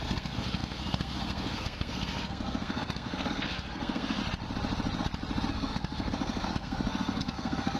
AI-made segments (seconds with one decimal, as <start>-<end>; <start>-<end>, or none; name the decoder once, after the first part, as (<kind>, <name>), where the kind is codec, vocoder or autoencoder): 0.0-4.2 (codec, SNAC); 5.5-7.8